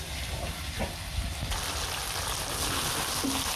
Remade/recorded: recorded